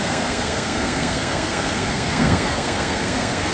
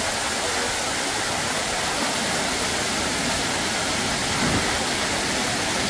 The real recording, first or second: second